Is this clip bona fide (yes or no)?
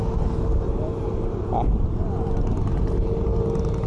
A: yes